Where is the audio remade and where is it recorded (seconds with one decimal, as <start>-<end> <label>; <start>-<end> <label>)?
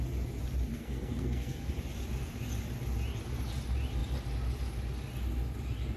0.0-0.7 recorded; 0.7-1.7 remade; 1.7-6.0 recorded